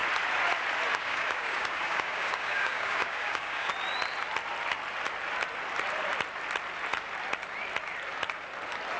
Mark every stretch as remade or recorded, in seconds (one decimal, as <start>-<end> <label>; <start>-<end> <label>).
0.0-0.9 recorded; 0.9-3.7 remade; 3.7-9.0 recorded